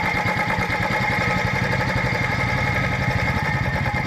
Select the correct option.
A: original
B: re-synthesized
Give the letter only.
B